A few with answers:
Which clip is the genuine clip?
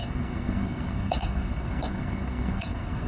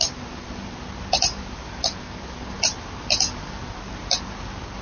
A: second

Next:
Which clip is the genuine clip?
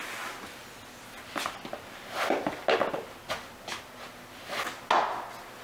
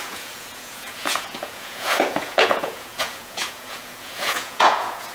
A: first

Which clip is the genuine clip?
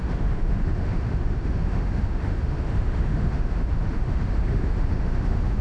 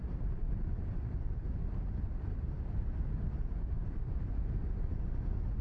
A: second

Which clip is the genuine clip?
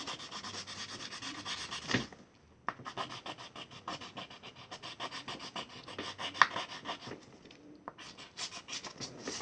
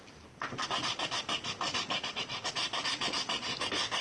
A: first